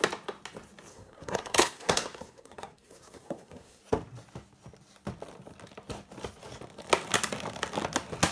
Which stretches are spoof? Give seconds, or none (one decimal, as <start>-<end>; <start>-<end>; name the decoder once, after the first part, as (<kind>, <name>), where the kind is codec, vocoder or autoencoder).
0.9-3.8 (codec, SNAC)

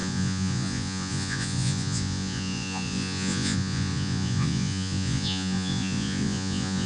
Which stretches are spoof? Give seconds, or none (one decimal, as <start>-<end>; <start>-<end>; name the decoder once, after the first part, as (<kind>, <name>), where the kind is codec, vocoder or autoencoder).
0.0-6.9 (vocoder, Vocos)

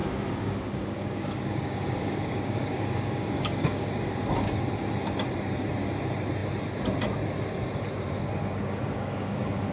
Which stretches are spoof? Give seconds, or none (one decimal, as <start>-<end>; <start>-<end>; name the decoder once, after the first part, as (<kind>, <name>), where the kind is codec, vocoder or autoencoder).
0.0-4.6 (codec, DAC); 8.2-9.7

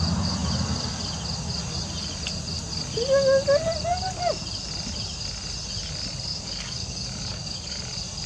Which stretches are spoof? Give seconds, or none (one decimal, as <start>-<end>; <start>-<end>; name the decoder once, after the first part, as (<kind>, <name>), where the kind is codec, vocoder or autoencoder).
6.3-7.8 (codec, DAC)